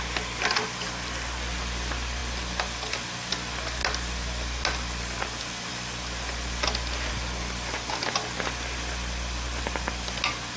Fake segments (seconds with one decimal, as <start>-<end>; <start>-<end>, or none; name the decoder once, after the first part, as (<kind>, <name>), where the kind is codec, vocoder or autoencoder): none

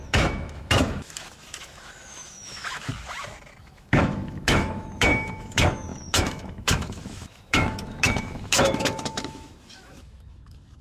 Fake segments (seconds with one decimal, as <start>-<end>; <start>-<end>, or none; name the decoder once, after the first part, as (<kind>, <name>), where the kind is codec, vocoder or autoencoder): 0.0-2.9 (autoencoder, DAC-VAE); 3.6-10.8

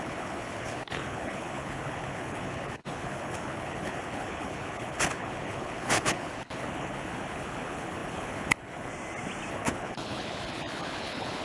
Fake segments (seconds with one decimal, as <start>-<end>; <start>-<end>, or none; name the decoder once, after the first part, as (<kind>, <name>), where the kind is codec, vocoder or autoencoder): 0.0-8.9 (codec, HILCodec); 9.5-11.4